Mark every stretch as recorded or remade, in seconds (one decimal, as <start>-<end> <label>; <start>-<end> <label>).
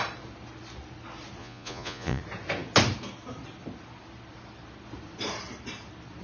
0.0-1.4 recorded; 1.4-2.2 remade; 2.2-6.2 recorded